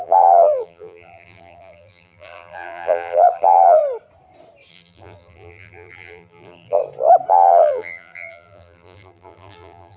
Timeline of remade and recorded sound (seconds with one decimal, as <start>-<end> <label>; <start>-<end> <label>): 0.0-3.8 remade; 3.8-4.7 recorded; 4.7-6.8 remade; 6.8-7.3 recorded; 7.3-10.0 remade